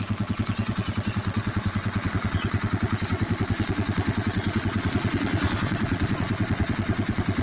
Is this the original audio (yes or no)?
no